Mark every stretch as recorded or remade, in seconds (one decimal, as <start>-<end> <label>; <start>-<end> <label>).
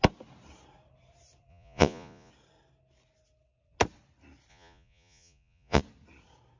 0.0-1.5 recorded; 1.5-2.3 remade; 2.3-4.5 recorded; 4.5-5.8 remade; 5.8-6.6 recorded